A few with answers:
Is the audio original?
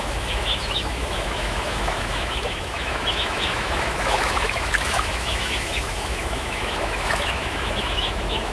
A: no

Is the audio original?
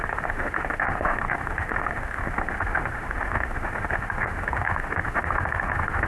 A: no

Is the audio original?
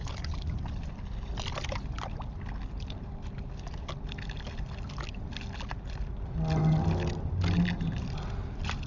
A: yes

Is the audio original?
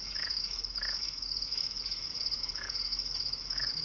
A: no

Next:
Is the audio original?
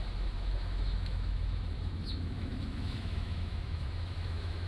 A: no